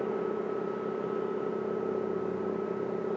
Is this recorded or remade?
recorded